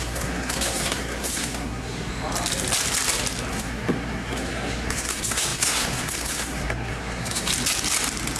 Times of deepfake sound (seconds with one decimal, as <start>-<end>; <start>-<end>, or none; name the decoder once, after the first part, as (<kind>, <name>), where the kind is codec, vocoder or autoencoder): 0.0-2.1 (codec, SNAC); 3.5-7.5